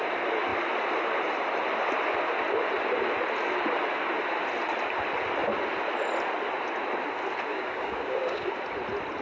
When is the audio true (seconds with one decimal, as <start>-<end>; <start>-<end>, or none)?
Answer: 0.0-7.5; 8.5-9.2